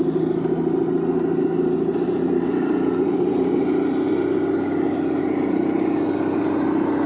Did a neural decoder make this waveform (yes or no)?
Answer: no